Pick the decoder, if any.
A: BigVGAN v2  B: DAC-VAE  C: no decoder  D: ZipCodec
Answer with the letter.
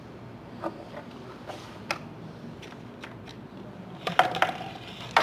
C